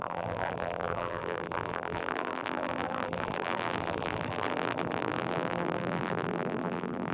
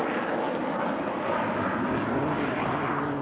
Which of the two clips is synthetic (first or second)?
first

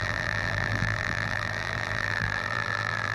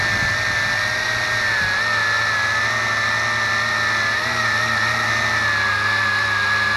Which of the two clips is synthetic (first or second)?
first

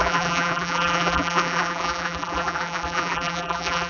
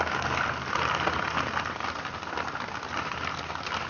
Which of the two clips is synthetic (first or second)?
first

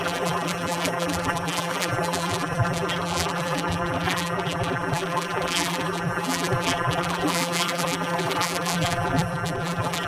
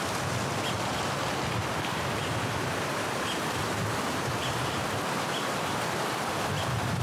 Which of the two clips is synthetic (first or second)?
first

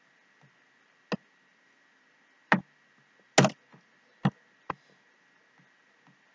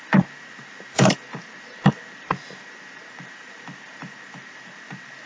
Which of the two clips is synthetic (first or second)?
second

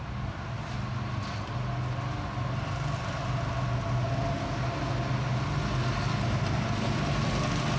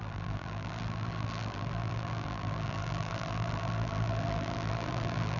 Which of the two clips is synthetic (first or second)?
second